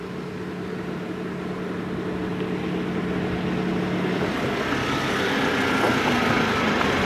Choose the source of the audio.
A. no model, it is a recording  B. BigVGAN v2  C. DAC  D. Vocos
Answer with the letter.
A